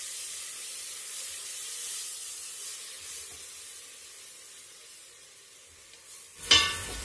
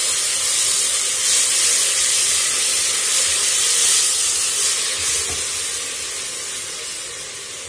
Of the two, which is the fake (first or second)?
first